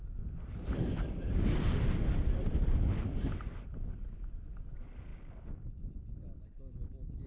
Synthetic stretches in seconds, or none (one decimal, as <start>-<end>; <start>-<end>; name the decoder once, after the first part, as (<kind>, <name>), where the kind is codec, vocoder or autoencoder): none